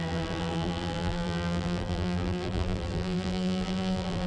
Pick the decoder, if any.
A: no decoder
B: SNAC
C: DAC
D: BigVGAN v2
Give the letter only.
D